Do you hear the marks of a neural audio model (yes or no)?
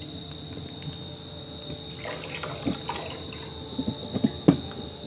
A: no